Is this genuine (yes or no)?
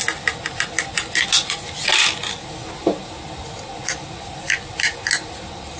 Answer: yes